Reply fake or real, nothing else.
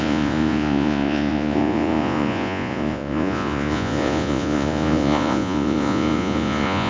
fake